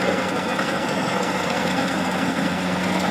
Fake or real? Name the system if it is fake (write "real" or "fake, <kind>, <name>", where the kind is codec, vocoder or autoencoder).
fake, codec, SNAC